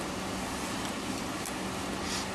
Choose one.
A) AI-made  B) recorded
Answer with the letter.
B